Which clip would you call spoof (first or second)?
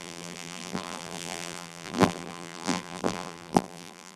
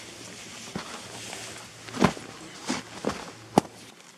first